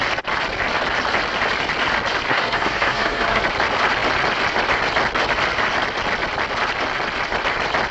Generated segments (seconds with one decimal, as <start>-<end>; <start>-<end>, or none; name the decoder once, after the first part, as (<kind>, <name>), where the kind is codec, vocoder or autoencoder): 2.3-3.4 (codec, SNAC)

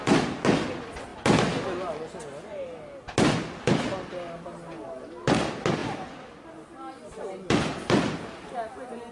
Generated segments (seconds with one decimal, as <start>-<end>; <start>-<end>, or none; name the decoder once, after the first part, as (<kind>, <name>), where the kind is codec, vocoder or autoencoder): none

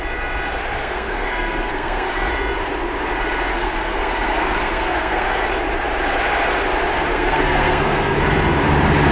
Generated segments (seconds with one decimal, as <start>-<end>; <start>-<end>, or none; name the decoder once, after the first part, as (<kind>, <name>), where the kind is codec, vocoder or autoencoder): 0.8-2.3 (codec, SNAC); 3.5-5.5; 7.1-8.2

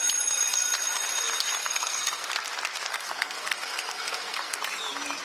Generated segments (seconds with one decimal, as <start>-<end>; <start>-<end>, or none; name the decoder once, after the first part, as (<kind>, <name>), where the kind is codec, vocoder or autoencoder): 1.6-2.3 (codec, SNAC); 2.9-4.6

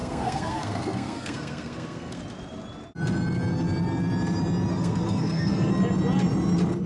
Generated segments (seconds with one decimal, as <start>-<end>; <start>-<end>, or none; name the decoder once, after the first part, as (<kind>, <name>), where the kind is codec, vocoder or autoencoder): 0.0-2.2 (codec, SNAC); 4.7-5.7

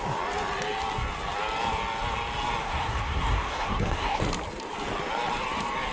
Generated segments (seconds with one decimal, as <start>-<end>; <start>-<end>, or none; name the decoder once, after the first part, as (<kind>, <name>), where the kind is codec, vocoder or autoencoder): 2.6-4.2 (codec, SNAC)

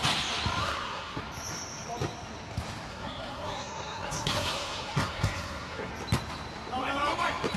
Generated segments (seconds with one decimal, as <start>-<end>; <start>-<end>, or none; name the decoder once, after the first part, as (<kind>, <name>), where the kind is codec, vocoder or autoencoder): 0.6-1.2 (codec, SNAC); 2.9-5.9

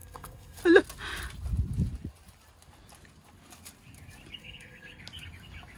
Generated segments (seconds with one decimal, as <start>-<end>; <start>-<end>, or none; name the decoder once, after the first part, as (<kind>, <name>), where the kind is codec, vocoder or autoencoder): 0.0-0.6 (codec, SNAC); 4.4-5.0